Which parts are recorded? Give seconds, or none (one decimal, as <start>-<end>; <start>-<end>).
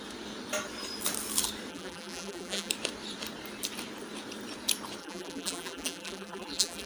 0.0-1.7; 2.7-5.0